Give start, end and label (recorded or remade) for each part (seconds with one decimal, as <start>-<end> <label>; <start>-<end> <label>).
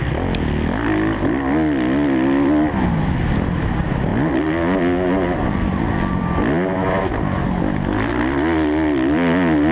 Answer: 0.0-9.7 recorded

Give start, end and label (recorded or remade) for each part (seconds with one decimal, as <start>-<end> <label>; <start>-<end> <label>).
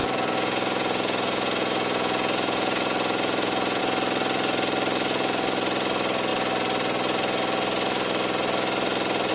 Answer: 0.0-3.8 remade; 3.8-9.3 recorded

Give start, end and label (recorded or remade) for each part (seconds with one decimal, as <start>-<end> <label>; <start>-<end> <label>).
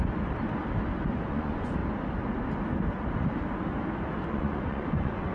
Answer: 0.0-1.3 recorded; 1.3-1.8 remade; 1.8-4.3 recorded; 4.3-5.3 remade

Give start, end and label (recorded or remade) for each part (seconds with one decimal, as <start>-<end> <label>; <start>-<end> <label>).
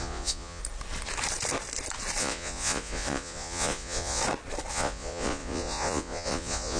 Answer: 0.0-0.6 remade; 0.6-2.2 recorded; 2.2-4.2 remade; 4.2-4.7 recorded; 4.7-6.8 remade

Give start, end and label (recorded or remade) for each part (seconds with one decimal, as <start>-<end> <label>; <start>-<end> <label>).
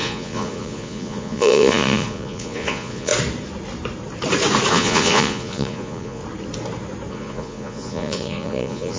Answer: 0.0-3.1 remade; 3.1-4.7 recorded; 4.7-6.2 remade; 6.2-7.1 recorded; 7.1-9.0 remade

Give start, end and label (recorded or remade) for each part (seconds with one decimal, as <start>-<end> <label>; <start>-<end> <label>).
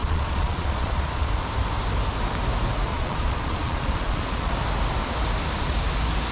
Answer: 0.0-1.3 remade; 1.3-2.9 recorded; 2.9-4.5 remade; 4.5-6.3 recorded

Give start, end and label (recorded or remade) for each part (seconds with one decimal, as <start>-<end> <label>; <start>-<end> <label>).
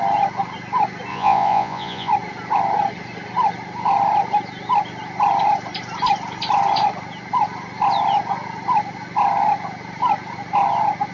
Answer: 0.0-1.1 recorded; 1.1-2.1 remade; 2.1-11.1 recorded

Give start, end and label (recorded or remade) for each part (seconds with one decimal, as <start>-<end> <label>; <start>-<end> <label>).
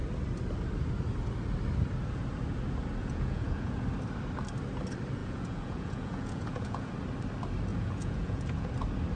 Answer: 0.0-3.0 recorded; 3.0-3.8 remade; 3.8-5.2 recorded; 5.2-6.9 remade; 6.9-7.7 recorded; 7.7-8.7 remade; 8.7-9.2 recorded